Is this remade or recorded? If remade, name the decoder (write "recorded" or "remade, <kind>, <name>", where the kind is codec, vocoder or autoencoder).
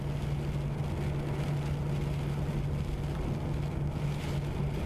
recorded